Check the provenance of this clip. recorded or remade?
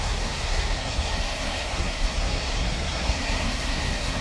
remade